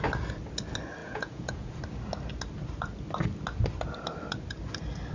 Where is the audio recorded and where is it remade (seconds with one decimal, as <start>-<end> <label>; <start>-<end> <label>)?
0.0-1.0 recorded; 1.0-1.8 remade; 1.8-5.1 recorded